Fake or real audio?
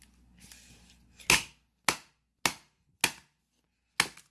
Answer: real